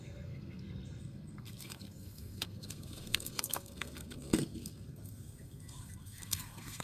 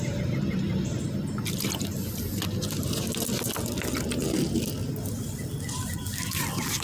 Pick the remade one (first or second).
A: first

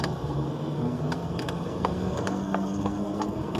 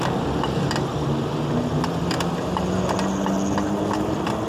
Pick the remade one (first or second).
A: first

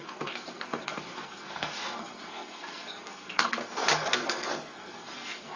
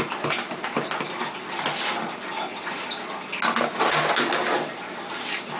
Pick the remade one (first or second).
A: first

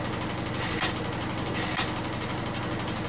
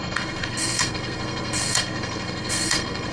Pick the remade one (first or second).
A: second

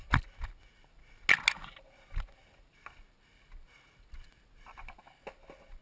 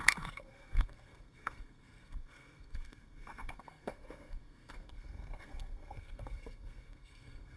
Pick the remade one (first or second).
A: second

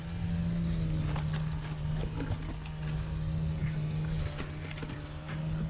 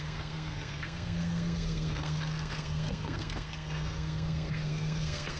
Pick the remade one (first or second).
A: second